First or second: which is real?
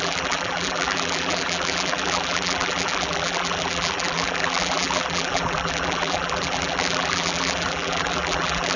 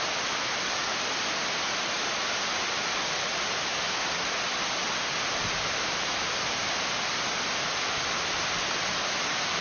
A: second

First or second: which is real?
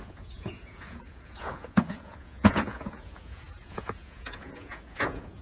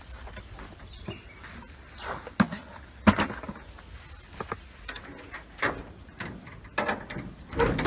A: second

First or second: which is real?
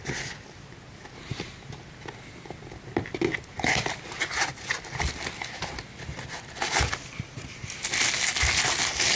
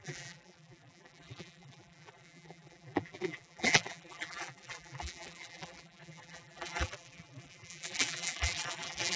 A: first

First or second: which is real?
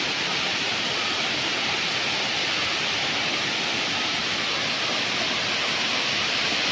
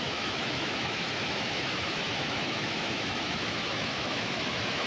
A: first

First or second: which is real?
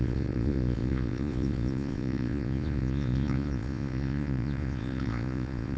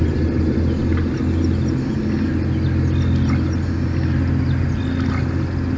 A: second